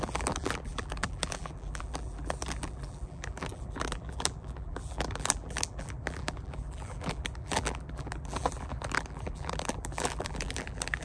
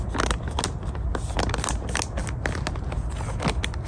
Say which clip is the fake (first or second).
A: first